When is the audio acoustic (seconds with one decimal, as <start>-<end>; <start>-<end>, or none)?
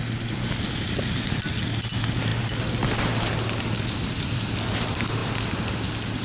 0.0-2.3; 4.8-6.2